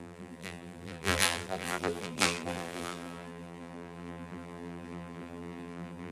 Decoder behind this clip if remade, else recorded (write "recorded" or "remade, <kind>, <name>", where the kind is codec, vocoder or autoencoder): remade, vocoder, BigVGAN v2